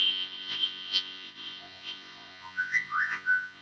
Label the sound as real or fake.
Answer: fake